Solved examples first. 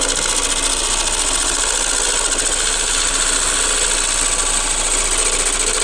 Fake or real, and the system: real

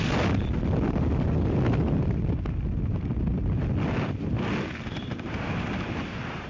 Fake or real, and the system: real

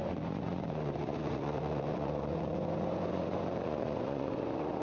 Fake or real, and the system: fake, vocoder, Vocos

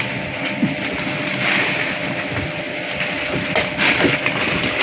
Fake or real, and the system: real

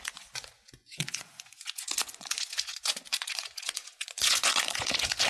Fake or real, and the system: fake, vocoder, Vocos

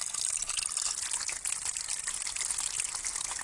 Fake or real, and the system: real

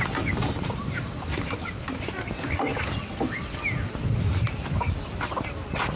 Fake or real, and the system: real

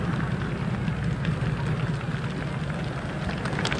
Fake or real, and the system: real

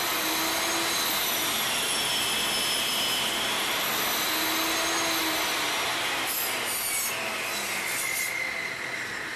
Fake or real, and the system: real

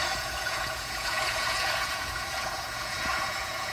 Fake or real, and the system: fake, vocoder, Vocos